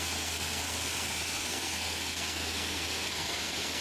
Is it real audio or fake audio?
fake